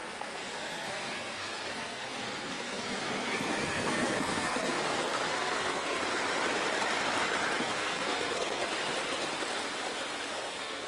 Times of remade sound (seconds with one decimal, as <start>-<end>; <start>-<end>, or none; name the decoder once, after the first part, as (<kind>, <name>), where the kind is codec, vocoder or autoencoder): 0.0-6.0 (codec, SNAC); 7.6-8.6; 10.3-10.9